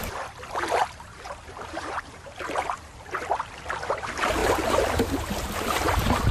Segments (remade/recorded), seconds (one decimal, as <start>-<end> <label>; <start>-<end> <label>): 0.0-0.8 recorded; 0.8-3.2 remade; 3.2-4.4 recorded; 4.4-5.2 remade; 5.2-6.3 recorded